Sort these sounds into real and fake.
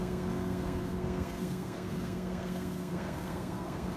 fake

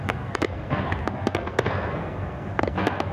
fake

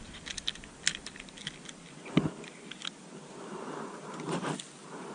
real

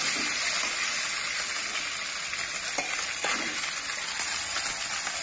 real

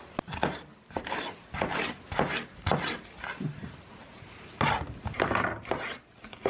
real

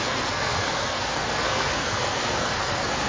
fake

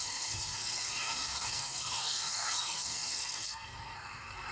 fake